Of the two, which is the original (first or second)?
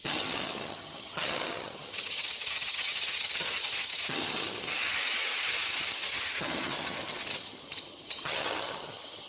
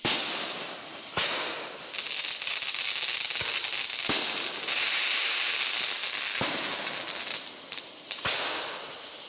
second